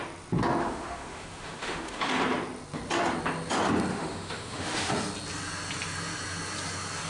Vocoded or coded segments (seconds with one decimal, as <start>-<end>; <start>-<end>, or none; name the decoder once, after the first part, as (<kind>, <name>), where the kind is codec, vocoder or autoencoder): 0.6-2.1 (autoencoder, DAC-VAE); 3.9-4.9